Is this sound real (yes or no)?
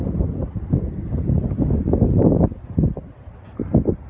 yes